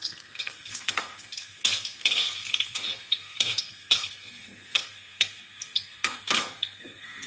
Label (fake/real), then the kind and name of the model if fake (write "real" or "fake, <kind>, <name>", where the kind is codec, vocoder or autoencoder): fake, codec, SNAC